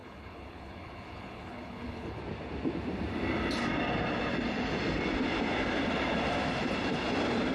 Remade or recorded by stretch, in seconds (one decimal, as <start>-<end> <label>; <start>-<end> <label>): 0.0-2.2 remade; 2.2-7.5 recorded